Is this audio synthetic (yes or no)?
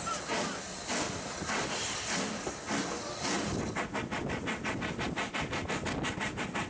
no